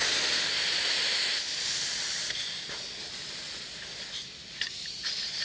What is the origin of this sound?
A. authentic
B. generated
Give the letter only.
A